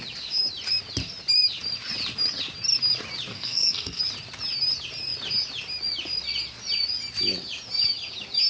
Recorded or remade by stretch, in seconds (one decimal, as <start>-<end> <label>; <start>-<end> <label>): 0.0-3.3 recorded; 3.3-4.0 remade; 4.0-8.5 recorded